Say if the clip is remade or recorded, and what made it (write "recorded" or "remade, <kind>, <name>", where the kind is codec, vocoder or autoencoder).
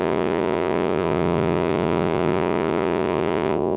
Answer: remade, vocoder, Vocos